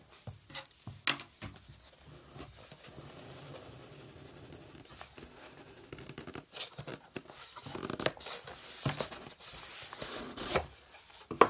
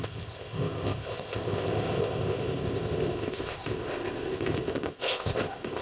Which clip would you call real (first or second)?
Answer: first